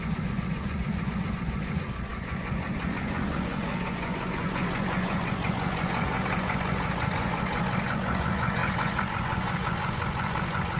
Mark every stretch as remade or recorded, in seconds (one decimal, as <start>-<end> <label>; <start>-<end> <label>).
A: 0.0-10.8 remade